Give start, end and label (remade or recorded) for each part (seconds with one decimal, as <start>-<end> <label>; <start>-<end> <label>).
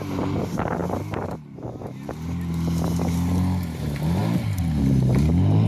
0.0-5.7 recorded